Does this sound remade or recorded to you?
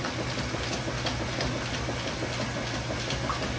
recorded